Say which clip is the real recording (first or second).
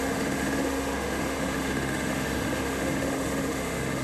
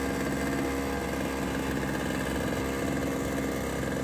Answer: second